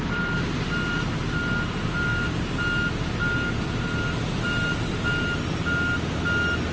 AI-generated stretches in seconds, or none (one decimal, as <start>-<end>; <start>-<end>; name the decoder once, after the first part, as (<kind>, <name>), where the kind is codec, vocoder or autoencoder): none